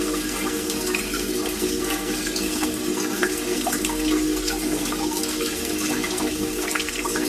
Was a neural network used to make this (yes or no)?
yes